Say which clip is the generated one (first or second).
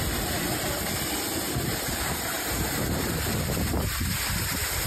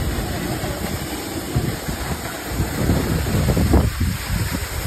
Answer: first